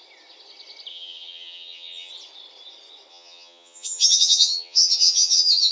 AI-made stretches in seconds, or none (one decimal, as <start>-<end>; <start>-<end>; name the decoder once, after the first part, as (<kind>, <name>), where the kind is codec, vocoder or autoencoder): 0.9-2.1 (vocoder, HiFi-GAN); 3.1-5.7